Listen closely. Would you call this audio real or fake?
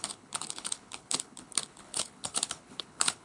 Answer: fake